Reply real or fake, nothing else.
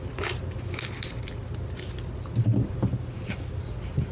real